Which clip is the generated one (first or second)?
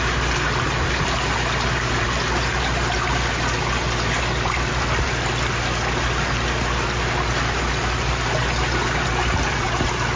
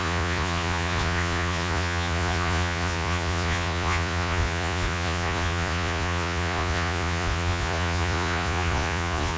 second